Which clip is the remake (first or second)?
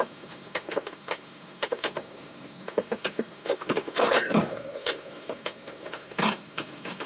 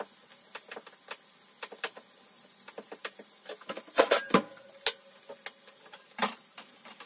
first